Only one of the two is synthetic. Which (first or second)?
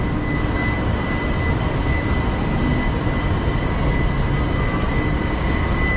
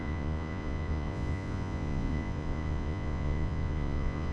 second